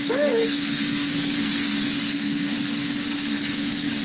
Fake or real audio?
fake